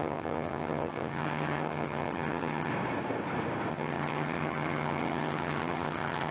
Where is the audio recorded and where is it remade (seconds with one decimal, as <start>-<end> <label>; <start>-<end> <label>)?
0.0-2.7 remade; 2.7-3.7 recorded; 3.7-6.3 remade